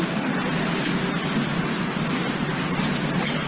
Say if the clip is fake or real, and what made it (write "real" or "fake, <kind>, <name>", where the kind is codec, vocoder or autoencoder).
real